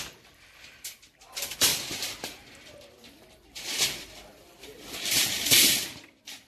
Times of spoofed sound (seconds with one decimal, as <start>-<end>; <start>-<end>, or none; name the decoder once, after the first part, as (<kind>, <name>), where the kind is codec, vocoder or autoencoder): 0.0-6.5 (vocoder, BigVGAN v2)